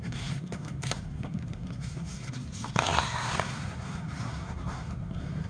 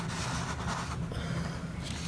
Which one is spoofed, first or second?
first